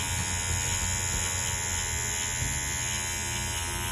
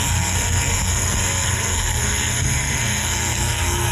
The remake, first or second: second